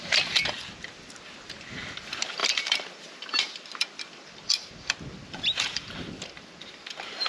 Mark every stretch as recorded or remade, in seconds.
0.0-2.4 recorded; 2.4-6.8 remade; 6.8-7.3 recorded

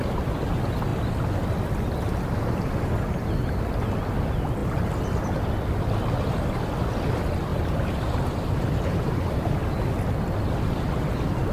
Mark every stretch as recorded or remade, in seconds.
0.0-7.5 recorded; 7.5-9.2 remade; 9.2-11.5 recorded